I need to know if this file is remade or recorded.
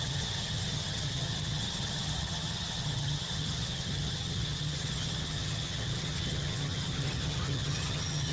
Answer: remade